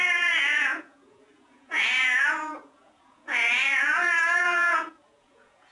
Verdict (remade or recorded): remade